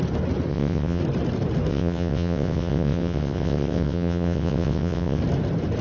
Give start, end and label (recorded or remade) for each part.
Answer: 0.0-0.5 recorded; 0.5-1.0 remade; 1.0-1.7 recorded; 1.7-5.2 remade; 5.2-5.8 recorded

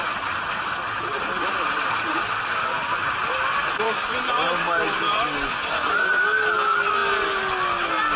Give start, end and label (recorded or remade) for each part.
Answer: 0.0-8.2 recorded